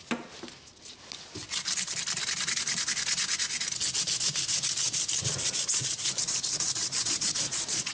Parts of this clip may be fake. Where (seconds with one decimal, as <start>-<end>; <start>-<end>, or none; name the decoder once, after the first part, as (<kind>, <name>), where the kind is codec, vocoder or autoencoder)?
6.9-7.9 (vocoder, Vocos)